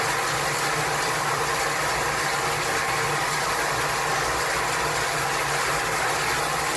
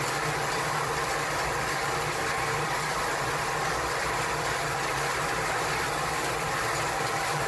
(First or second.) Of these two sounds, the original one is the first